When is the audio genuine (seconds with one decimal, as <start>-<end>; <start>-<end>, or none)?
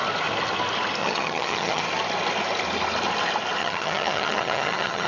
0.0-1.0; 1.8-3.6